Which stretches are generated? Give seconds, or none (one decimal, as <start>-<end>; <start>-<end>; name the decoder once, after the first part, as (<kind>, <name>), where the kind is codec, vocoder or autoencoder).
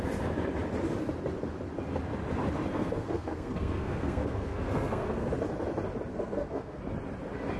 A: 2.7-5.3 (codec, SNAC); 6.1-6.8